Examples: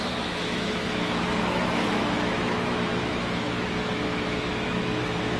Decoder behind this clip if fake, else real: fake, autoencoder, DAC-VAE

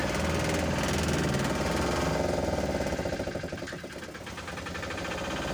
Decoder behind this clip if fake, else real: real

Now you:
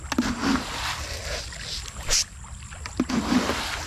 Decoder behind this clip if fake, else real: real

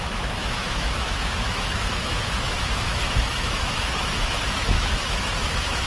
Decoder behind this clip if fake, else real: fake, autoencoder, DAC-VAE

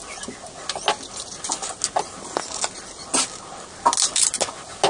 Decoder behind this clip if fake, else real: real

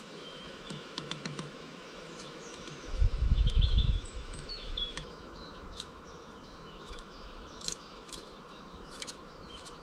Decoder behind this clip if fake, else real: fake, autoencoder, DAC-VAE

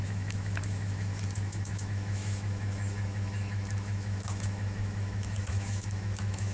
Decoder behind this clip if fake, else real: fake, autoencoder, DAC-VAE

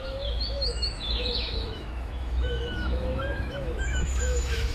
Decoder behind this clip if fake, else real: fake, autoencoder, DAC-VAE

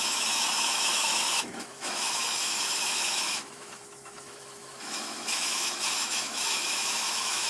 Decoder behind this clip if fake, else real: fake, autoencoder, DAC-VAE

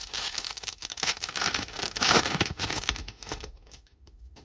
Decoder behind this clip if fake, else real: fake, autoencoder, DAC-VAE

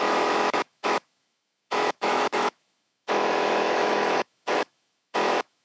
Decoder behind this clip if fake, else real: fake, autoencoder, DAC-VAE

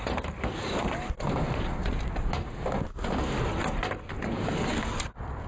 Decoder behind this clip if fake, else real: real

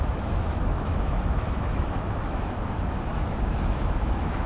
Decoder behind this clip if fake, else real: fake, autoencoder, DAC-VAE